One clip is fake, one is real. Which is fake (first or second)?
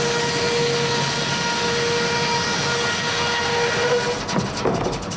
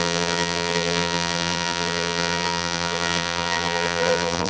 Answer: second